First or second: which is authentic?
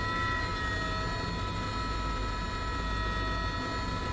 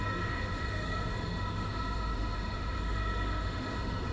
first